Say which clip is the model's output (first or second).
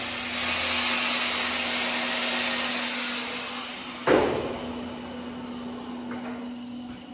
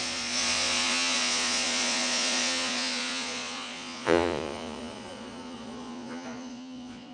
second